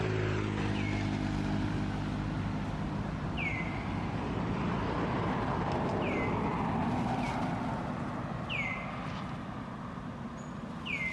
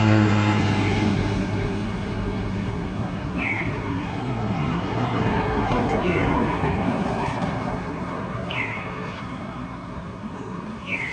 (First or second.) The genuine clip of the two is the first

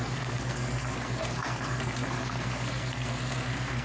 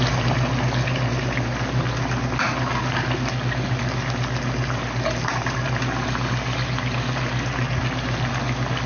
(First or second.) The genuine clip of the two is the second